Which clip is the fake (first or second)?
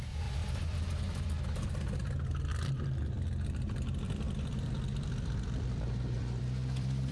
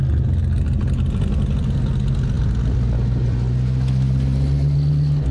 first